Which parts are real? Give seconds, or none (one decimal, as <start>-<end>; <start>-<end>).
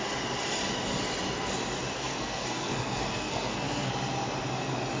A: 0.0-1.9; 3.9-5.0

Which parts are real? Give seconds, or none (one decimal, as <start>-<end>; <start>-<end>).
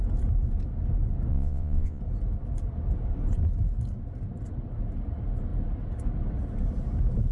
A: 0.0-1.3; 2.0-7.3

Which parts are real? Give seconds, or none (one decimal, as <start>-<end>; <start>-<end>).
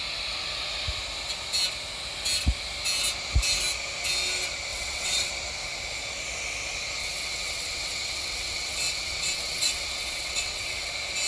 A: 0.0-4.7; 5.3-7.0; 10.9-11.3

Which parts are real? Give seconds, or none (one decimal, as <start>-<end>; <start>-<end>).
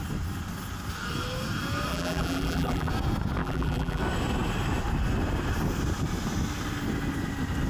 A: 0.0-1.9; 2.9-3.4; 4.0-7.7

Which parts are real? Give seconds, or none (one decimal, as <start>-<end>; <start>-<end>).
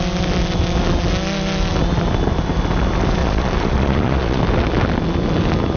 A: 0.0-3.2; 4.4-5.8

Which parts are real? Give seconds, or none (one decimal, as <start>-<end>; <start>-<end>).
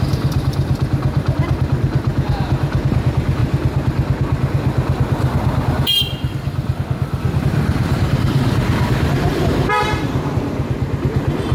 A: 3.4-7.4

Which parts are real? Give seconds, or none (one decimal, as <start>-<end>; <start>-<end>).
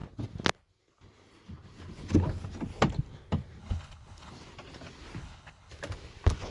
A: 0.0-3.6; 4.3-5.2; 5.7-6.5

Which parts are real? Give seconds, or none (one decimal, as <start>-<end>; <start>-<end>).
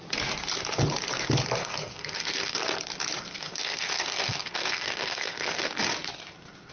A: 0.0-1.6; 2.6-3.3; 5.6-6.7